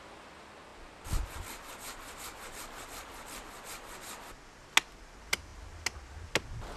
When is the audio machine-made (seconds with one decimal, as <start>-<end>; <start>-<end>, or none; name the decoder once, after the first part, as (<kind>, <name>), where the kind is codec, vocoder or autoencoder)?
none